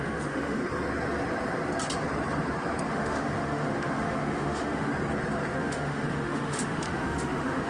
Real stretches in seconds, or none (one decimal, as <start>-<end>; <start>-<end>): 0.6-2.9; 4.9-5.5